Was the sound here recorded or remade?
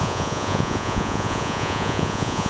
remade